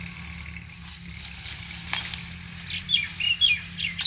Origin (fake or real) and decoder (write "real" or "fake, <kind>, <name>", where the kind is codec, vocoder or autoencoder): real